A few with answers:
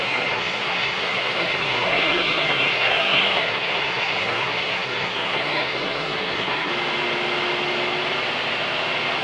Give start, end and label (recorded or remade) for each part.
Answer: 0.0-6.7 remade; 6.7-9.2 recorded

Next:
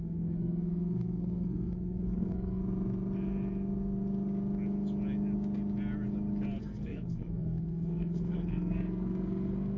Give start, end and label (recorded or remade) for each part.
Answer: 0.0-2.6 remade; 2.6-6.6 recorded; 6.6-9.8 remade

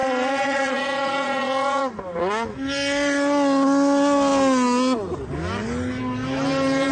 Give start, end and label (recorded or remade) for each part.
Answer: 0.0-1.9 remade; 1.9-6.9 recorded

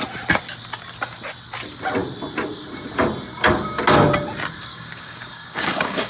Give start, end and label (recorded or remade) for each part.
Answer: 0.0-4.7 recorded; 4.7-6.1 remade

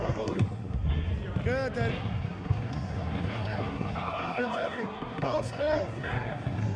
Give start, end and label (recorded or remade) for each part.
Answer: 0.0-1.1 remade; 1.1-1.9 recorded; 1.9-6.8 remade